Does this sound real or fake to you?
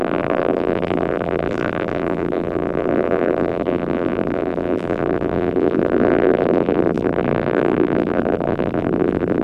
fake